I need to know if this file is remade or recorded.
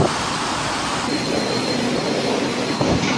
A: recorded